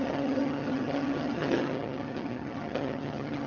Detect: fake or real fake